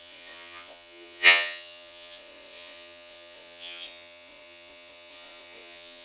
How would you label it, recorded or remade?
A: remade